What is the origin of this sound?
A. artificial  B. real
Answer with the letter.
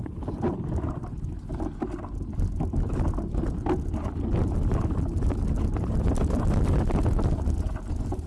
B